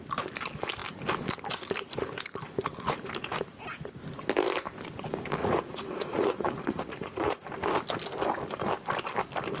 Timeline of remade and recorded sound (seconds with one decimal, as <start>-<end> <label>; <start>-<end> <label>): 0.0-5.4 recorded; 5.4-7.5 remade; 7.5-9.6 recorded